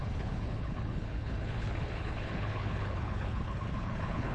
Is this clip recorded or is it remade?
remade